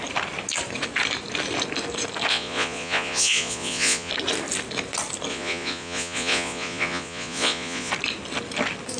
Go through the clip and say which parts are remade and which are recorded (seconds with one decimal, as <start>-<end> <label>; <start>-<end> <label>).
0.0-2.3 recorded; 2.3-4.1 remade; 4.1-5.3 recorded; 5.3-7.9 remade; 7.9-9.0 recorded